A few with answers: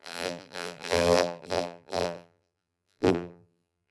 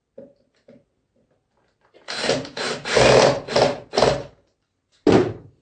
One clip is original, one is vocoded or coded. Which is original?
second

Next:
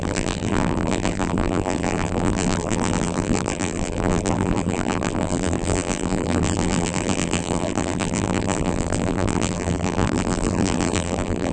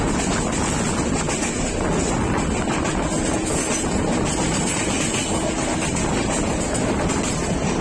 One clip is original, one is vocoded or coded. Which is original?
second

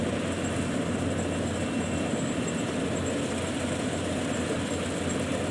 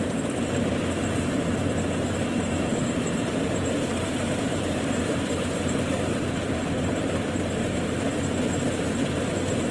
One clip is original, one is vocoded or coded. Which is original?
first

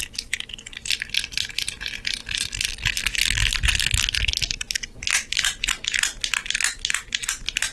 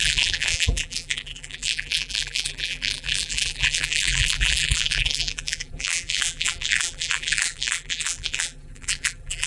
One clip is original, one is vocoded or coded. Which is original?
first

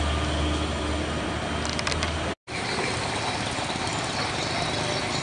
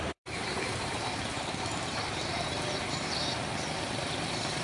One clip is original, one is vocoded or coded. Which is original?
first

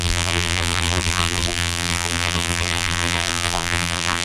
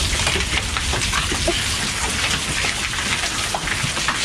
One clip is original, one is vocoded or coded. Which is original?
second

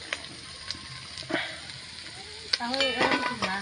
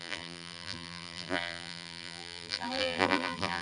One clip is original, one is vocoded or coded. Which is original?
first